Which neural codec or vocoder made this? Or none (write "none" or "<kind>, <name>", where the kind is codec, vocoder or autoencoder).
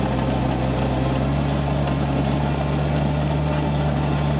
none